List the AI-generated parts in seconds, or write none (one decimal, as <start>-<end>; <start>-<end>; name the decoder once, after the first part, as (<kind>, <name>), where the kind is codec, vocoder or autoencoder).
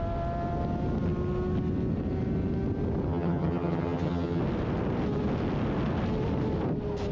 3.1-4.4 (vocoder, HiFi-GAN)